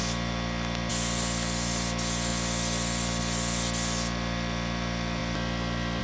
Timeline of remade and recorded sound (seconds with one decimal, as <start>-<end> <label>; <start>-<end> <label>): 0.0-6.0 recorded